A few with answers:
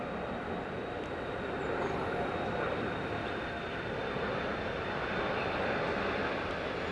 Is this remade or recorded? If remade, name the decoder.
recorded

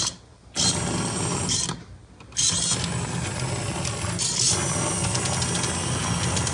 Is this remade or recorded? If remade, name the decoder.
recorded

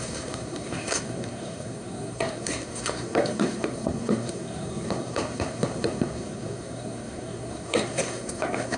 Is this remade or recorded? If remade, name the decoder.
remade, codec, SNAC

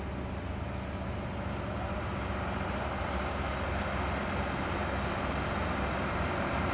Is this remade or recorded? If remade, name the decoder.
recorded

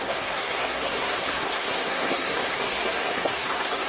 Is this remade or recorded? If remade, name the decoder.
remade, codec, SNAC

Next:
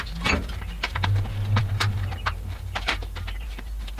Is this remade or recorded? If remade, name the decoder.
remade, vocoder, BigVGAN v2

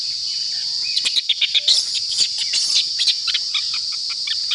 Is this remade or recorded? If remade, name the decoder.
recorded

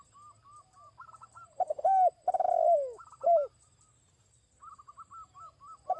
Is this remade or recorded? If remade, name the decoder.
recorded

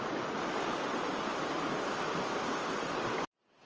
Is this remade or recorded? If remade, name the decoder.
recorded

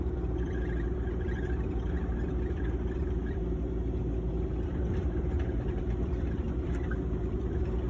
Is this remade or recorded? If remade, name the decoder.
remade, vocoder, BigVGAN v2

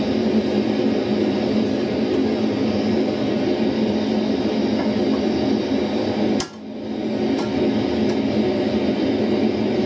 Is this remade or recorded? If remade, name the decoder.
recorded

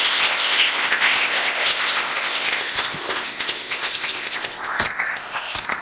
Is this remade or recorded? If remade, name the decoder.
remade, codec, ZipCodec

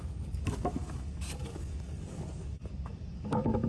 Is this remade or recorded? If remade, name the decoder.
remade, codec, DAC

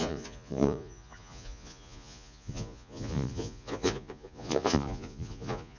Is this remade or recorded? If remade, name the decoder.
remade, vocoder, Vocos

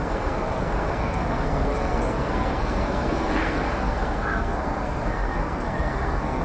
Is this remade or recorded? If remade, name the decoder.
remade, codec, SNAC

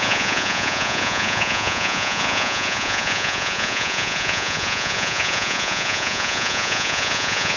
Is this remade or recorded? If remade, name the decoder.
remade, vocoder, Vocos